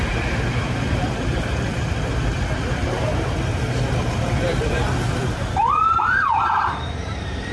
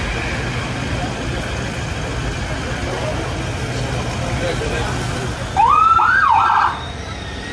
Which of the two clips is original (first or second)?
second